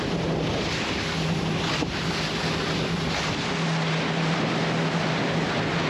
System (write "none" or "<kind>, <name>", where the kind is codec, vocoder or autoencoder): none